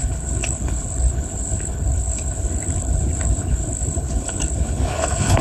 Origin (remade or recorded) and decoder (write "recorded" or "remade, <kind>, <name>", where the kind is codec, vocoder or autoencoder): remade, codec, HILCodec